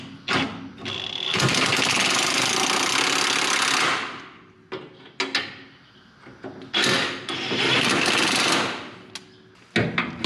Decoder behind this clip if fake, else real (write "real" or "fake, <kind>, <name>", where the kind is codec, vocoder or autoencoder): real